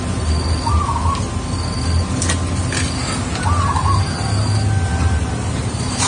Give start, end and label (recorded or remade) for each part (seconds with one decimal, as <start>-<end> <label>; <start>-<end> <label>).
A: 0.0-4.9 recorded; 4.9-6.1 remade